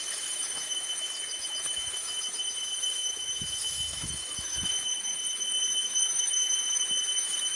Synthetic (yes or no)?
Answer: yes